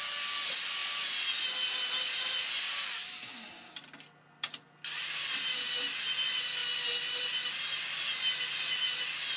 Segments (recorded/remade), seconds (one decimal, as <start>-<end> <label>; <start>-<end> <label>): 0.0-9.4 recorded